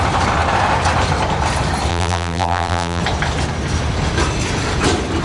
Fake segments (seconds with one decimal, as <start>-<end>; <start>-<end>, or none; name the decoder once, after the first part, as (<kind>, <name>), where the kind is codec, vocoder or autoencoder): 1.9-3.0 (vocoder, BigVGAN v2)